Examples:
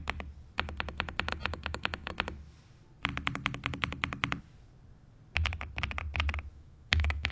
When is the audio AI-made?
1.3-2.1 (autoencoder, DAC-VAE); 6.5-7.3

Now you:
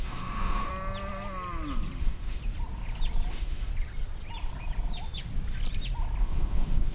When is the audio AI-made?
0.0-0.7 (autoencoder, DAC-VAE); 2.0-2.4; 3.3-3.7; 6.2-6.9

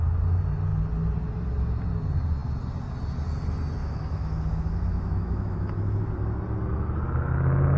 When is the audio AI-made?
3.8-6.1 (autoencoder, DAC-VAE)

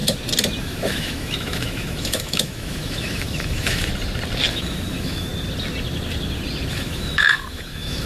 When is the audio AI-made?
0.6-3.9 (autoencoder, DAC-VAE); 4.5-5.3; 6.7-8.1

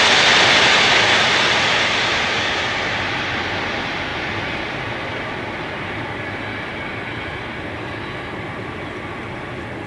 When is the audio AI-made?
none

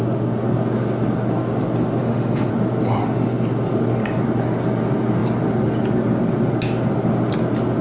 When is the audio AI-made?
2.0-2.5 (autoencoder, DAC-VAE)

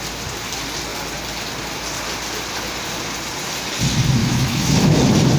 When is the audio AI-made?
4.2-5.0 (autoencoder, DAC-VAE)

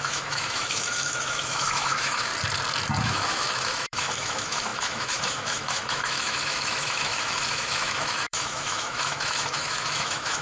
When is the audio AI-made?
0.0-2.3 (autoencoder, DAC-VAE); 3.0-10.4